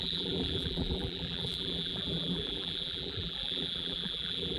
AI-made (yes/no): yes